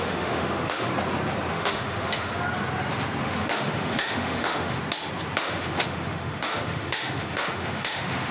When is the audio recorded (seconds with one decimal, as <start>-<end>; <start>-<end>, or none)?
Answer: 0.9-1.5; 2.3-3.2; 4.8-5.4